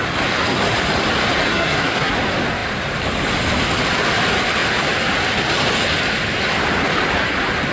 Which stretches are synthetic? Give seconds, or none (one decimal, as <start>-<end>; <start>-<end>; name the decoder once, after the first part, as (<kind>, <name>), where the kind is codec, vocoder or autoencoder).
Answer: 1.5-2.1 (codec, SNAC)